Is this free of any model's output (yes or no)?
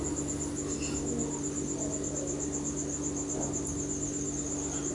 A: yes